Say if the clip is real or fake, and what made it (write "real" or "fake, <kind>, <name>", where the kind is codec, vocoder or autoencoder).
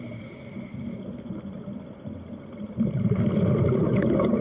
real